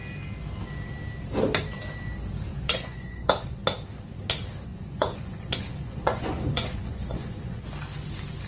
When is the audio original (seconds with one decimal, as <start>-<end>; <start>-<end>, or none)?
0.0-2.5; 3.6-4.7; 7.6-8.5